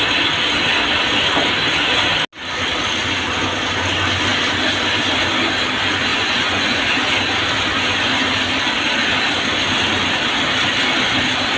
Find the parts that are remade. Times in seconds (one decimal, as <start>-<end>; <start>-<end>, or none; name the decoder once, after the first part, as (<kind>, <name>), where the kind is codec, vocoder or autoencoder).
6.1-6.8 (vocoder, Vocos)